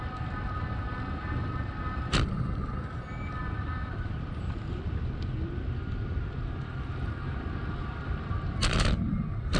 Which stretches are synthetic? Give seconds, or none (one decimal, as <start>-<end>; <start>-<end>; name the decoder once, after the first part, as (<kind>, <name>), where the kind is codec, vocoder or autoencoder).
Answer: none